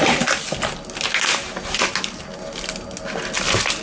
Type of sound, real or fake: real